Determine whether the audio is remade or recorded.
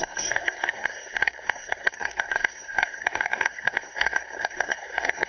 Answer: remade